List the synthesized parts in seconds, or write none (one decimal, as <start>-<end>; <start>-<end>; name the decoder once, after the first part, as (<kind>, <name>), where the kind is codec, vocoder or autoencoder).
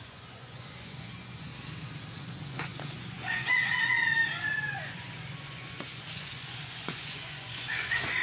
0.0-1.5 (vocoder, Vocos); 2.2-3.6; 4.4-8.2